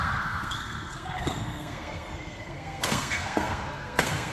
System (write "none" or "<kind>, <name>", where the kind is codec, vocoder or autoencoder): codec, SNAC